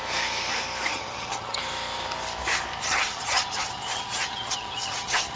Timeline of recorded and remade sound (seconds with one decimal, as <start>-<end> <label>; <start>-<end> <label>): 0.0-0.9 recorded; 0.9-1.6 remade; 1.6-2.8 recorded; 2.8-5.4 remade